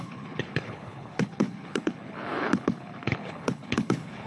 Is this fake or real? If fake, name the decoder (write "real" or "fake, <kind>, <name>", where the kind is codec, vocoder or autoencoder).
fake, codec, HILCodec